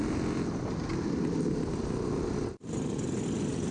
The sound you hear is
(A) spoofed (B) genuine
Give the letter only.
B